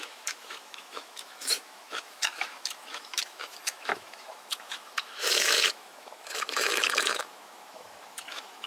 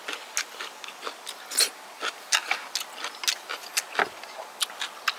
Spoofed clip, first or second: first